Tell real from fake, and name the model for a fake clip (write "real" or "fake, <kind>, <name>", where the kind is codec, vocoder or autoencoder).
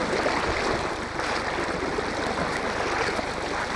real